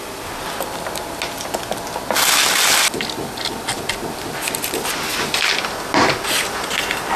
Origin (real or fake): real